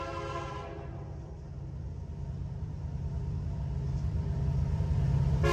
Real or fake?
real